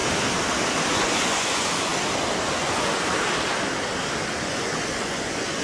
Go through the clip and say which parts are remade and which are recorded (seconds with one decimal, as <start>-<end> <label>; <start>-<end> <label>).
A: 0.0-0.9 recorded; 0.9-1.9 remade; 1.9-2.5 recorded; 2.5-3.1 remade; 3.1-4.3 recorded; 4.3-5.6 remade